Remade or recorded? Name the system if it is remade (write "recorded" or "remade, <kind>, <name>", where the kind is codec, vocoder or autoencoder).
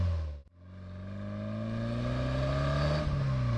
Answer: recorded